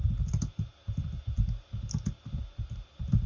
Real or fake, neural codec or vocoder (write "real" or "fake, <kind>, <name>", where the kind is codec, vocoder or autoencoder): real